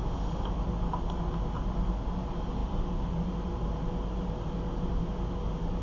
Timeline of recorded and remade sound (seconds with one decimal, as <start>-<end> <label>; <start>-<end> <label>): 0.0-5.8 recorded

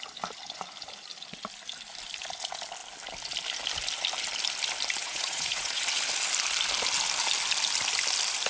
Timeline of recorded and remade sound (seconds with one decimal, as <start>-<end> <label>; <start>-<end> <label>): 0.0-5.0 recorded; 5.0-5.8 remade; 5.8-8.5 recorded